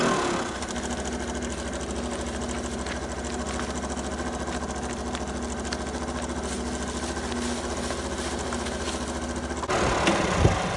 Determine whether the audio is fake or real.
real